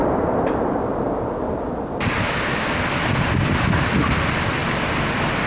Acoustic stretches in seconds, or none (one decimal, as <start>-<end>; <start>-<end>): 0.0-5.5